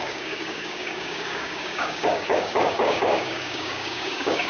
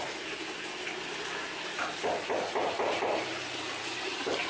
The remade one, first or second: first